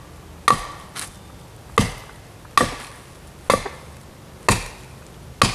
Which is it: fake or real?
real